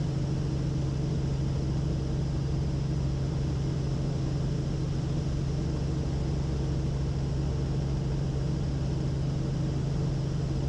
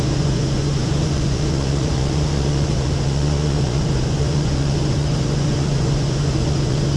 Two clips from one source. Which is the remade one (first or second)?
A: second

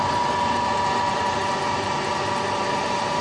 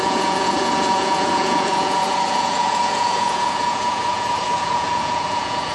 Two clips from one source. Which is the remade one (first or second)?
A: second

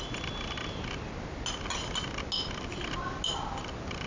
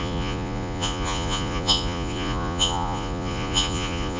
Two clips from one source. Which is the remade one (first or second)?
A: second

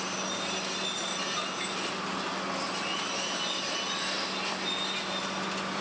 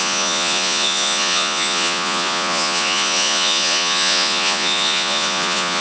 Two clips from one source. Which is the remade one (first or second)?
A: second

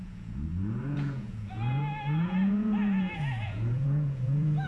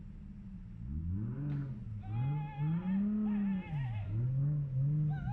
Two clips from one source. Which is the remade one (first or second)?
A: first